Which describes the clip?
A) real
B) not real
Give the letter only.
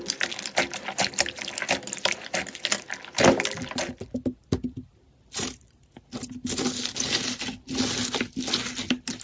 A